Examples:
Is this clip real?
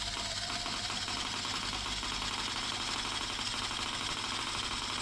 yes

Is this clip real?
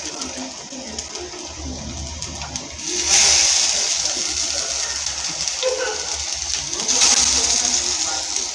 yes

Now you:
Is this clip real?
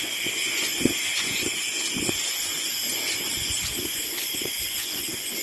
no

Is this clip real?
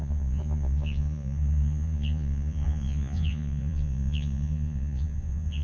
no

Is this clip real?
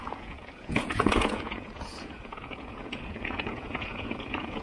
no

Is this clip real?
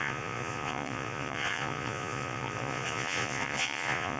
no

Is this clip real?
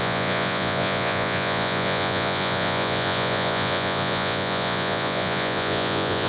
no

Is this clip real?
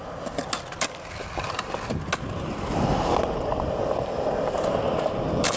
yes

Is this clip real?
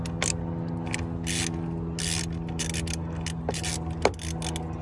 yes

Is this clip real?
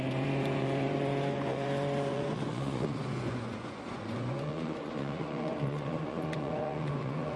no